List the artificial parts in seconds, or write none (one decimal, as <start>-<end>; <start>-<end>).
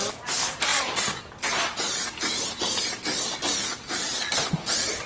none